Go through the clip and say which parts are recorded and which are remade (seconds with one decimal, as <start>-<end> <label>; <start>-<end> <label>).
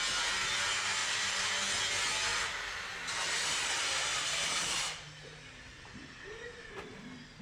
0.0-1.0 recorded; 1.0-1.5 remade; 1.5-2.3 recorded; 2.3-2.9 remade; 2.9-4.1 recorded; 4.1-7.0 remade; 7.0-7.4 recorded